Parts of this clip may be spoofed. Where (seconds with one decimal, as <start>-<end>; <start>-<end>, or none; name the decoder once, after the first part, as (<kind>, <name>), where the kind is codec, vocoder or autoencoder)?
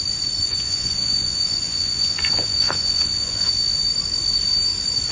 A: 0.4-3.5 (vocoder, Vocos)